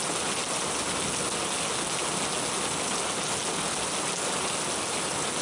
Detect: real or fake real